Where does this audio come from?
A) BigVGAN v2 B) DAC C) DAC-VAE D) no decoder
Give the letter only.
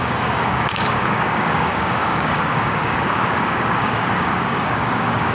B